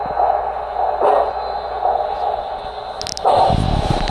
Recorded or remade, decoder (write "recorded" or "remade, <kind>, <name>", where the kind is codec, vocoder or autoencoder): recorded